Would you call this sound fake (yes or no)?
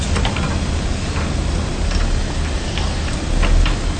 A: no